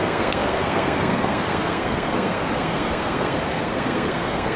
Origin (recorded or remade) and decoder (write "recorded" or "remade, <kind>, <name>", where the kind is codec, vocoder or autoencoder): remade, codec, SNAC